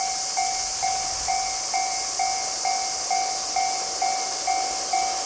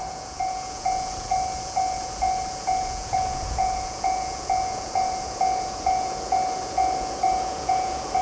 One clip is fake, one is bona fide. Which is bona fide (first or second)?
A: first